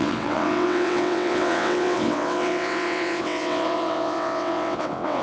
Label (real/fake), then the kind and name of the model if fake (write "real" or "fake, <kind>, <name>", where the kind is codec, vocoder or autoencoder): fake, vocoder, WaveNeXt